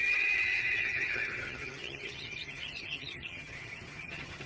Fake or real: fake